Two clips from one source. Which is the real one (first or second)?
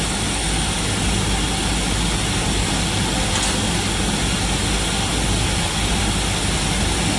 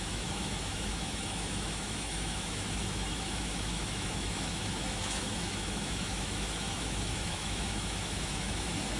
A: first